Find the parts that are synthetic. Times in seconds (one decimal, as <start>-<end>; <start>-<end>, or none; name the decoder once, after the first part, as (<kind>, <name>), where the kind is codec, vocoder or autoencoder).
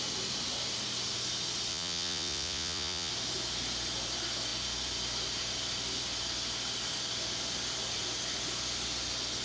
1.7-3.1 (vocoder, Vocos)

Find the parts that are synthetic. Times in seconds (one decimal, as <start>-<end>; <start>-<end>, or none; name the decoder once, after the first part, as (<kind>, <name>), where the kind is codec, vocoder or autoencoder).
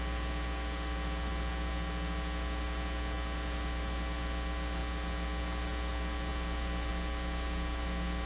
none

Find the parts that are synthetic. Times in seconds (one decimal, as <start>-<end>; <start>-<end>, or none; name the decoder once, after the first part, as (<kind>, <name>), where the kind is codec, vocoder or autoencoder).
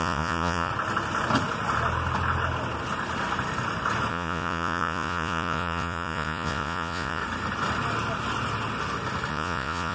0.0-0.7 (vocoder, Vocos); 4.1-7.2; 9.3-9.9